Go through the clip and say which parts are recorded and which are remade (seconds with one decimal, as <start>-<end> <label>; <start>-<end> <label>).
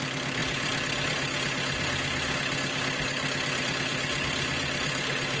0.0-5.4 recorded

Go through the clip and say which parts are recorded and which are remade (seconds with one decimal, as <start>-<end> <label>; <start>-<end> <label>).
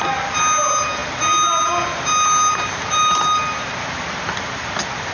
0.0-5.1 recorded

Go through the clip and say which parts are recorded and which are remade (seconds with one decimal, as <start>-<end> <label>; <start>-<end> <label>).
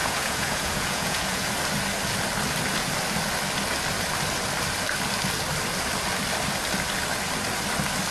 0.0-1.5 remade; 1.5-8.1 recorded